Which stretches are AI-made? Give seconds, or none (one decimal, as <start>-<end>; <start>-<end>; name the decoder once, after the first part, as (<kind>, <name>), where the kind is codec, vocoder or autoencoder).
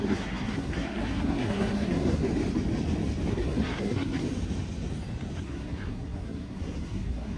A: 0.0-2.2 (codec, SNAC); 3.3-4.2; 5.4-7.4